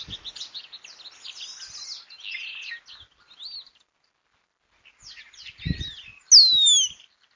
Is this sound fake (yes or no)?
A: no